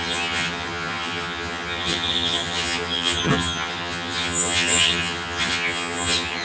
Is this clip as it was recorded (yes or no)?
no